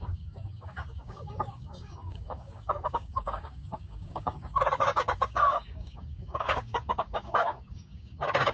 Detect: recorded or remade remade